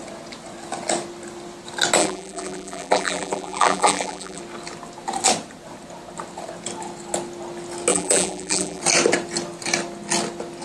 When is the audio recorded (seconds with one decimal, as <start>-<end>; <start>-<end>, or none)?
0.0-2.0; 4.4-7.9; 8.8-10.6